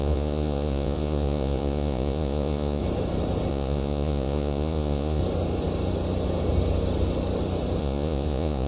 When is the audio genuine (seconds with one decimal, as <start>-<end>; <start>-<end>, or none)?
2.8-3.5; 5.2-7.8